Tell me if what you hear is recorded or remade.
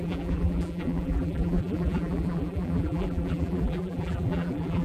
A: remade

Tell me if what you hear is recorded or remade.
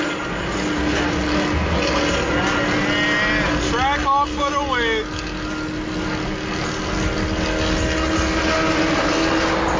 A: recorded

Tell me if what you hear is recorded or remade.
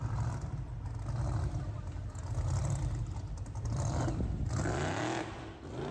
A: remade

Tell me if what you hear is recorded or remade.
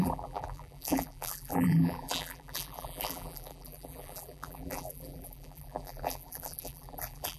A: remade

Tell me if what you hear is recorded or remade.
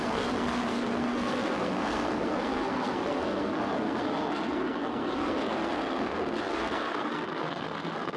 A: remade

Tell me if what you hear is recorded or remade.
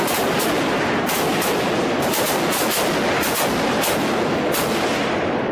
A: recorded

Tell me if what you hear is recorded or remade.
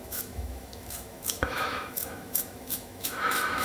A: remade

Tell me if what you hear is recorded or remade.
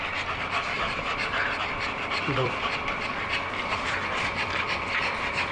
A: remade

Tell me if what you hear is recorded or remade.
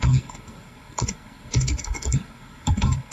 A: remade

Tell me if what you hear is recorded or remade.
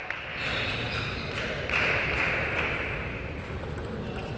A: recorded